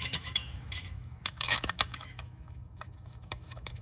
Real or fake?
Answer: fake